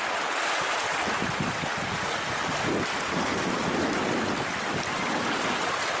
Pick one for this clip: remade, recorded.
recorded